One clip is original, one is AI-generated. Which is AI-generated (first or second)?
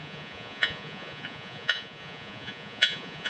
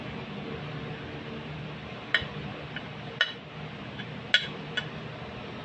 first